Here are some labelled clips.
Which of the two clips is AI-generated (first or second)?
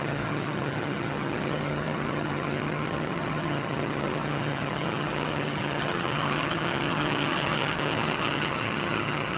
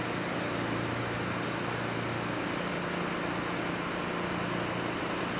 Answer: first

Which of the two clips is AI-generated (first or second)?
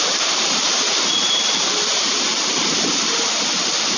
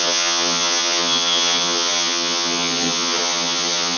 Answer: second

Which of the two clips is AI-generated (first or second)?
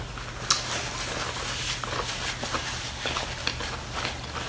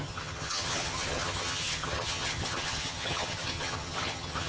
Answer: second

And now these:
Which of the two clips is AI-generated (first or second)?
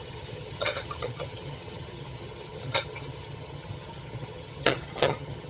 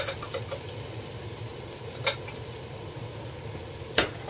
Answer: first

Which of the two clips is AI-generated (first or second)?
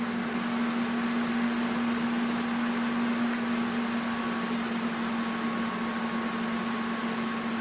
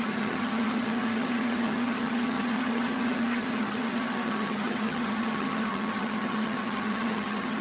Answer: second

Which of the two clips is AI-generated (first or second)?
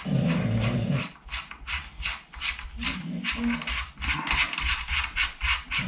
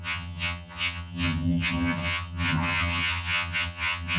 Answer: second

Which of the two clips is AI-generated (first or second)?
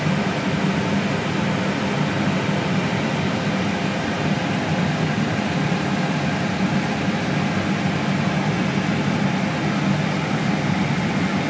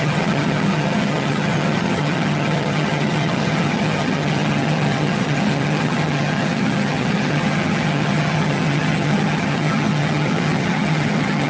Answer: second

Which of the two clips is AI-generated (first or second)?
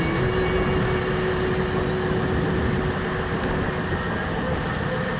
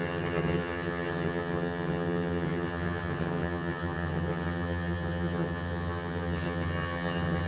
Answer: second